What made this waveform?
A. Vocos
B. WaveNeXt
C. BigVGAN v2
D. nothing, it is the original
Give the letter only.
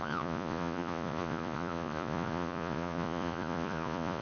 A